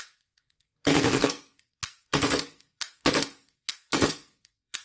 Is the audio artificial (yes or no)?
yes